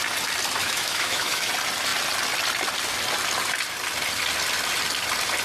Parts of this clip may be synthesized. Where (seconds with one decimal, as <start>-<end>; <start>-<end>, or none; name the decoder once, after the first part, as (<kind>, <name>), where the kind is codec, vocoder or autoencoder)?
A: 0.6-1.5 (autoencoder, DAC-VAE)